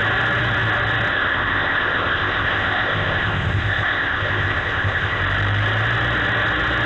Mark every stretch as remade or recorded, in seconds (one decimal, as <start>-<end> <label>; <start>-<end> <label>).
0.0-1.1 recorded; 1.1-5.2 remade; 5.2-6.9 recorded